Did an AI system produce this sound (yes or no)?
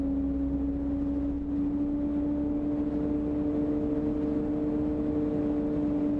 no